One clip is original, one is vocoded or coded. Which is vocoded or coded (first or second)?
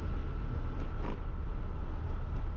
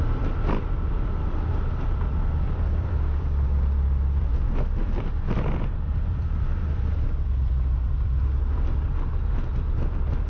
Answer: second